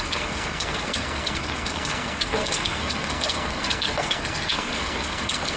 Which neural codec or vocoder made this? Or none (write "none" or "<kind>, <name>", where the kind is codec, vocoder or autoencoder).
codec, SNAC